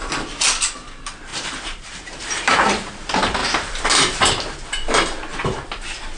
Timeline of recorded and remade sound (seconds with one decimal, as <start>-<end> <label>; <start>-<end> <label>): 0.0-1.3 recorded; 1.3-2.9 remade; 2.9-3.4 recorded; 3.4-4.3 remade; 4.3-6.2 recorded